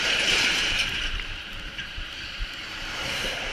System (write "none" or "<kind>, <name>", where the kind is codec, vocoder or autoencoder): vocoder, BigVGAN v2